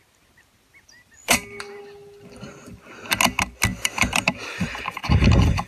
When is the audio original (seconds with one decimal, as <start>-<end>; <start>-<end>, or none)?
0.0-1.2; 1.8-3.7; 5.0-5.7